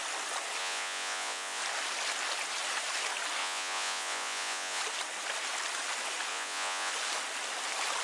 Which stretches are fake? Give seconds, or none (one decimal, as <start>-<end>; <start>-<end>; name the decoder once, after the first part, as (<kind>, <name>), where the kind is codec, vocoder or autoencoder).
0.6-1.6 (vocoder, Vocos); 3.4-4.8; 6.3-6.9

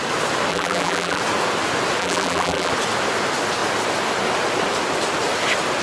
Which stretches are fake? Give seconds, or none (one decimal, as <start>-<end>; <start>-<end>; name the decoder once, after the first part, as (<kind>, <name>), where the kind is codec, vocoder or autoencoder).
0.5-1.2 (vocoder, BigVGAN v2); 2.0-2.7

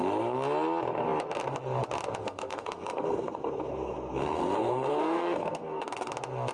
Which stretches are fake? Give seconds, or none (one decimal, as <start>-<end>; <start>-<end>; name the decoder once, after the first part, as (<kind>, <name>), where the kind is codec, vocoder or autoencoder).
2.2-6.1 (codec, SNAC)

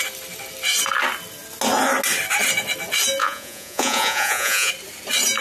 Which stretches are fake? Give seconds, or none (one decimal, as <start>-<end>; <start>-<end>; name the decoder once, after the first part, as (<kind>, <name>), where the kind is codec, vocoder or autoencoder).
3.2-4.7 (vocoder, Vocos)

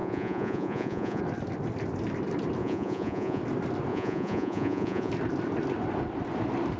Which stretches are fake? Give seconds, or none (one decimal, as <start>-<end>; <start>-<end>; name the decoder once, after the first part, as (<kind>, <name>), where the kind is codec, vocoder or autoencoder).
0.0-1.2 (vocoder, Vocos); 2.6-3.4; 3.9-5.1